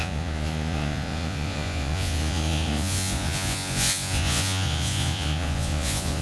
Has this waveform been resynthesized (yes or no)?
yes